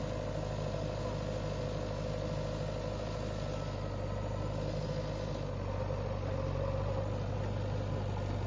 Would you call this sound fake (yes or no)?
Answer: no